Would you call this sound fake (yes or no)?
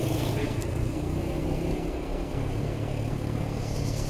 yes